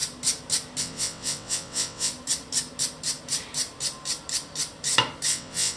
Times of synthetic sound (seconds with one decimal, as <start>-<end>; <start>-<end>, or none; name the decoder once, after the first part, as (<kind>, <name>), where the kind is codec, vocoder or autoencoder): 0.8-2.1 (vocoder, WaveNeXt); 5.3-5.8